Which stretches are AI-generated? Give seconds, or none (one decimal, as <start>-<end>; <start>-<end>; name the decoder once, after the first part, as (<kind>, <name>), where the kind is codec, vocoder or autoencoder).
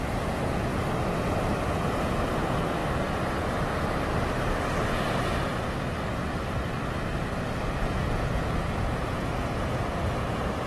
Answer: 0.0-0.7 (vocoder, Vocos); 1.8-2.8; 5.1-5.5; 7.6-10.7